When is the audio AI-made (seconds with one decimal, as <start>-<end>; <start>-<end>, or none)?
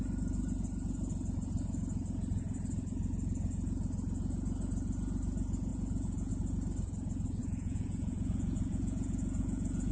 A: 5.7-6.3; 7.4-9.9